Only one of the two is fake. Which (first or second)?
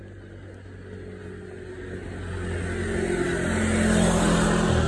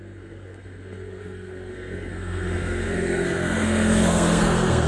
second